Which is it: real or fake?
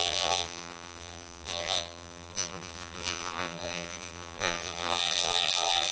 fake